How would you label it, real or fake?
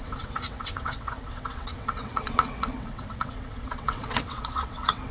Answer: fake